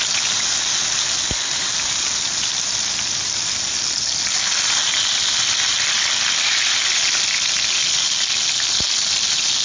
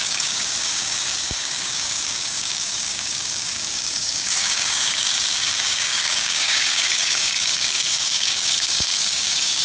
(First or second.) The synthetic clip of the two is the second